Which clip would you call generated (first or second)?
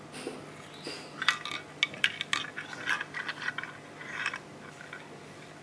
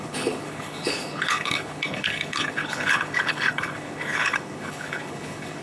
second